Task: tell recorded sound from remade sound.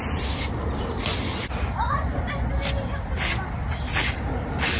recorded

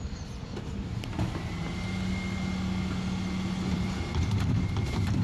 recorded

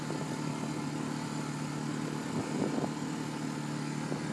recorded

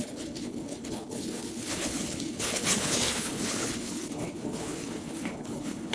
remade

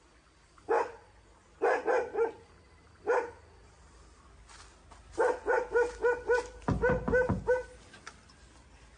recorded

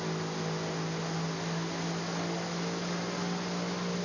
recorded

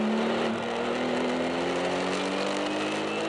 recorded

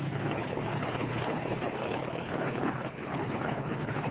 remade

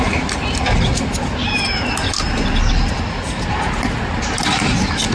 recorded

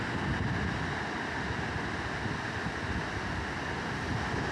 recorded